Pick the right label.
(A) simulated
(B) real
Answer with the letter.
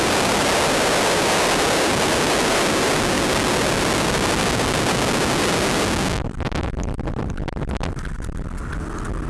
B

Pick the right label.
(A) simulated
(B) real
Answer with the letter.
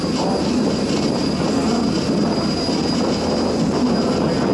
B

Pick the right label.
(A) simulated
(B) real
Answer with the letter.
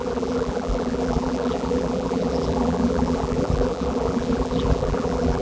A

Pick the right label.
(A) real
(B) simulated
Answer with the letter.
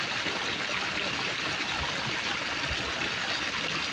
A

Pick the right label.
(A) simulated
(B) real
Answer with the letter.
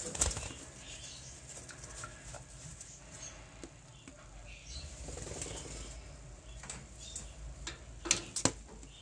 B